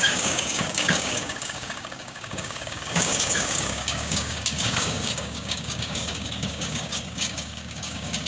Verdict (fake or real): fake